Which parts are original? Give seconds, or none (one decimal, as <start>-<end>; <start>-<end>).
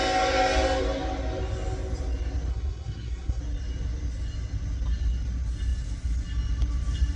0.0-2.5; 3.4-7.2